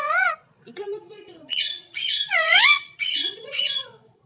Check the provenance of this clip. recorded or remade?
remade